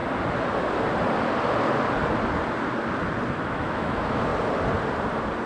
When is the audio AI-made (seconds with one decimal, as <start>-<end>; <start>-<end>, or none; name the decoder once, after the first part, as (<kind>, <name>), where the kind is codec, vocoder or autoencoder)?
3.3-4.3 (autoencoder, DAC-VAE)